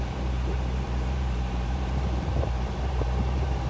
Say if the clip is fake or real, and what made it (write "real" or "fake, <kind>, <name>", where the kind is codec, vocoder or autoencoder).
fake, vocoder, BigVGAN v2